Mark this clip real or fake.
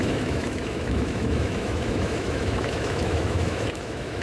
fake